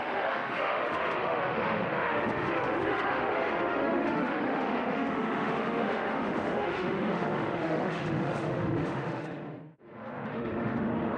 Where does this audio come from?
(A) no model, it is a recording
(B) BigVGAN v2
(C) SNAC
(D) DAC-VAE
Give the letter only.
D